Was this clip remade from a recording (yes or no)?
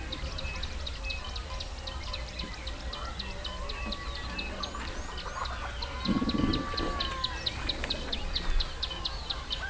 no